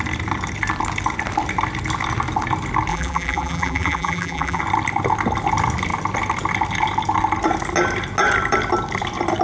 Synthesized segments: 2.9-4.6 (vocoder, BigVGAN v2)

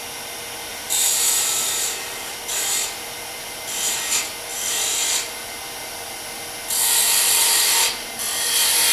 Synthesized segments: 0.7-2.3 (vocoder, BigVGAN v2)

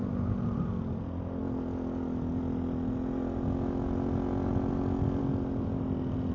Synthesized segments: none

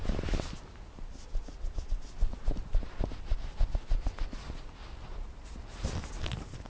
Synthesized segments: none